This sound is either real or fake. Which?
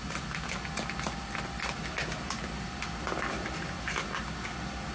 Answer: real